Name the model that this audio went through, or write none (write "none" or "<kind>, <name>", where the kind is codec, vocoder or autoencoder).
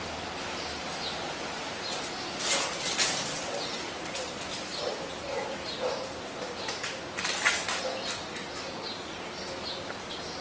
none